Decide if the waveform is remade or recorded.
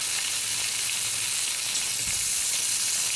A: recorded